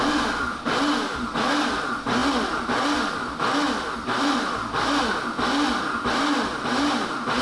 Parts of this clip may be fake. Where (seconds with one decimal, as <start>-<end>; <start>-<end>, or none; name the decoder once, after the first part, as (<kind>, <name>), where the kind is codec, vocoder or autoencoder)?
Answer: none